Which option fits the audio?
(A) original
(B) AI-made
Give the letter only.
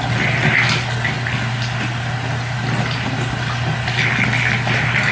A